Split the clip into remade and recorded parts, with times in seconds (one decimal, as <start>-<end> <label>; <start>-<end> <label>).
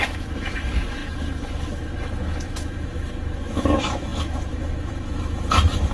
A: 0.0-5.9 remade